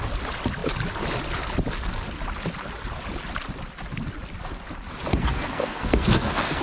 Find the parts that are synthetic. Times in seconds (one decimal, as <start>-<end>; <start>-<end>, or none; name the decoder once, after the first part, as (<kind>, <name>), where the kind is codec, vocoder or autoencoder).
5.1-6.6 (codec, SNAC)